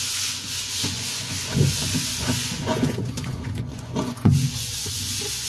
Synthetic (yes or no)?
yes